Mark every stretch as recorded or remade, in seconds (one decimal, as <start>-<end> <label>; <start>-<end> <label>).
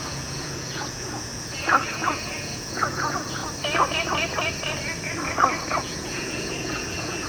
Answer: 0.0-3.4 remade; 3.4-5.8 recorded; 5.8-7.3 remade